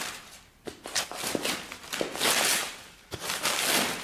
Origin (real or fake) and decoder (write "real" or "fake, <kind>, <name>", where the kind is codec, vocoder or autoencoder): real